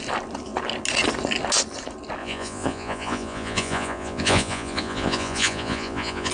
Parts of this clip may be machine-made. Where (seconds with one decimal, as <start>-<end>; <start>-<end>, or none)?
2.2-6.3